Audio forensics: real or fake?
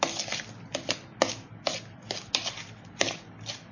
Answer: real